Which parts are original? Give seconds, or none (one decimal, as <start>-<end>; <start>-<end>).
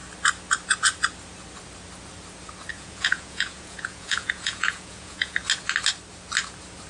0.0-2.7; 5.4-6.9